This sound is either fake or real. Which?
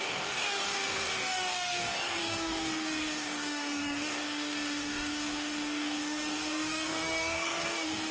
fake